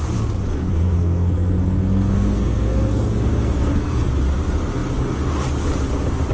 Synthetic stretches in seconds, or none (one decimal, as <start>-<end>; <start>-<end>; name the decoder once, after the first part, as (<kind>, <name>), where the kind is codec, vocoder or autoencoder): 0.5-4.1 (codec, SNAC)